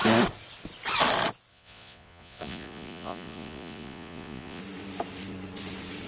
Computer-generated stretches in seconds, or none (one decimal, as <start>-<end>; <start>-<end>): 1.5-4.6